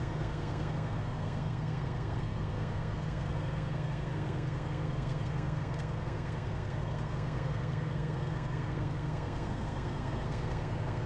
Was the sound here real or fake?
fake